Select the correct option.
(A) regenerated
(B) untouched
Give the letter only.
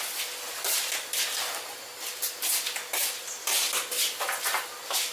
B